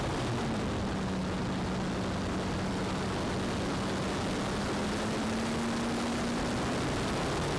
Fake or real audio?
real